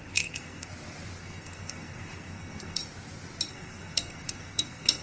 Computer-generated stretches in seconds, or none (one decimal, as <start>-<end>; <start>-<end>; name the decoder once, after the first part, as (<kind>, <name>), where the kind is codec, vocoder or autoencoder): 0.0-0.7 (codec, SNAC); 1.2-2.8; 3.5-5.0